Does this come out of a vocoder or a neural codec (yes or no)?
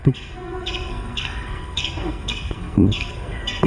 yes